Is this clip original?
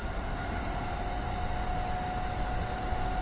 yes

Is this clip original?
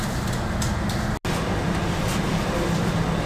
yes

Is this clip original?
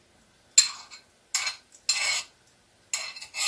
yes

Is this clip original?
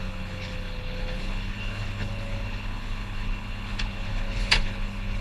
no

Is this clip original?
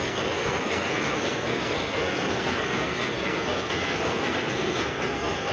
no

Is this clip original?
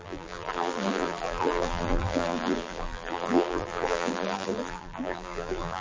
no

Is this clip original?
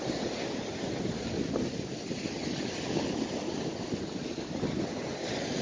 yes